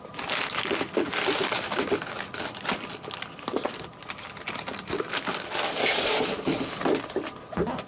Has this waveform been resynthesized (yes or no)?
no